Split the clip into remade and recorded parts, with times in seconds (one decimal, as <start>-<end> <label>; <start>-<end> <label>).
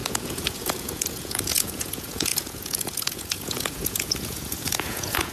0.0-5.3 remade